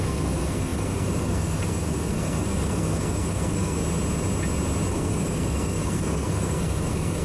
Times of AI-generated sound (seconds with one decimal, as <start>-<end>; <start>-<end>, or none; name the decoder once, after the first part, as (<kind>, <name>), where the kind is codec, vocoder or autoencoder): 0.0-3.8 (codec, SNAC); 4.9-7.2